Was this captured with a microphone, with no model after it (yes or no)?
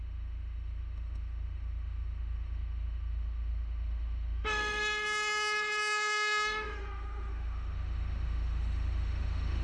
no